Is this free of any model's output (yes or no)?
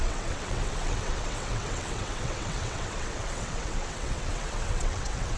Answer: no